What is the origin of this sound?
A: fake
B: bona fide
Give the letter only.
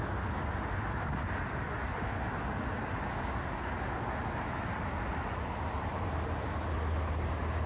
B